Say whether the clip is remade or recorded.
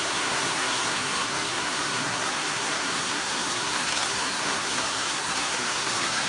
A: remade